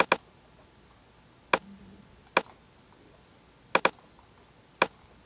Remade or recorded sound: recorded